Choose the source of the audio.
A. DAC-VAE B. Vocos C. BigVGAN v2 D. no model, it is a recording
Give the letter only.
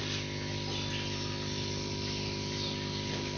D